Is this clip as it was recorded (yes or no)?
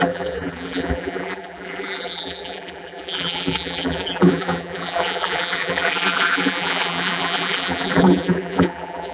no